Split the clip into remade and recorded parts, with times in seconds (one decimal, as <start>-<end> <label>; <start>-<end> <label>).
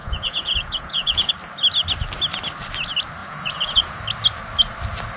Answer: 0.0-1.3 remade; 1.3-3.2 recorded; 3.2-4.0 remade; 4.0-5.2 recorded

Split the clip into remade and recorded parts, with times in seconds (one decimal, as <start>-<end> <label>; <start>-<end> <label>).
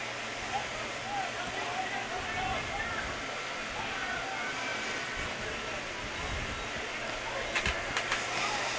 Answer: 0.0-1.2 recorded; 1.2-1.8 remade; 1.8-8.8 recorded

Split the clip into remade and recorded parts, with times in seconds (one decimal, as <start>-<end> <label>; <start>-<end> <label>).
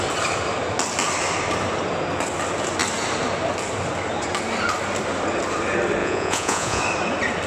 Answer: 0.0-6.0 recorded; 6.0-6.8 remade; 6.8-7.5 recorded